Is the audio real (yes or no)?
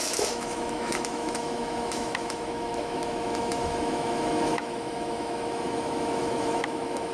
no